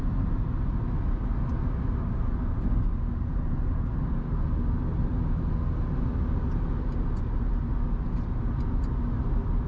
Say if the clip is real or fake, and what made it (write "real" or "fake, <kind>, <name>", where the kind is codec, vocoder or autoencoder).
real